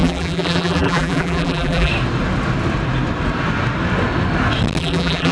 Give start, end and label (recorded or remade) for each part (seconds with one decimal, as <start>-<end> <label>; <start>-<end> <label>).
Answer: 0.0-1.9 remade; 1.9-4.8 recorded; 4.8-5.3 remade